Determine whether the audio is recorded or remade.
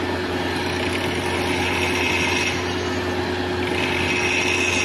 recorded